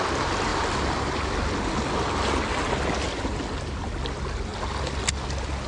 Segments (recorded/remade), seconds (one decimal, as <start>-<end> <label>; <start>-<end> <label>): 0.0-5.7 recorded